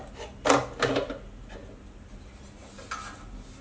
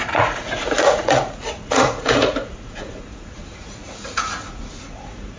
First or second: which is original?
first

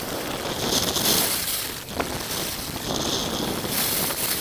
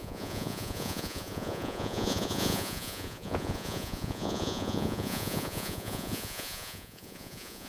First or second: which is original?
first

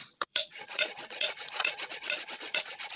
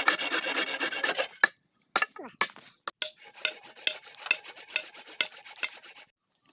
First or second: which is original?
second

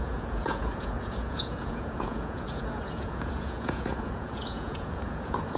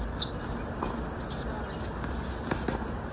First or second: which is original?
second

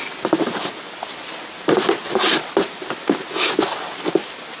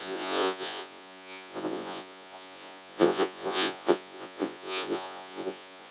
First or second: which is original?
first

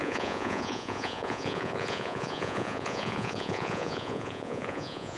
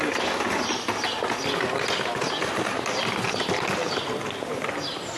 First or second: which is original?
second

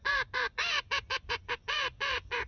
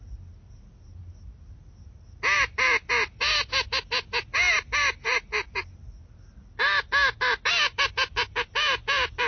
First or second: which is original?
second